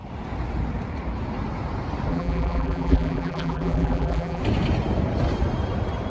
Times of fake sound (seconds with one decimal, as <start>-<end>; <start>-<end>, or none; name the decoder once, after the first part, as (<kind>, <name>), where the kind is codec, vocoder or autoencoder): 2.1-4.4 (vocoder, BigVGAN v2)